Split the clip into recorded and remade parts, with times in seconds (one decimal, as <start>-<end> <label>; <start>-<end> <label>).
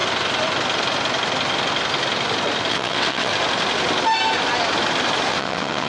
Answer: 0.0-2.7 recorded; 2.7-3.3 remade; 3.3-5.3 recorded; 5.3-5.9 remade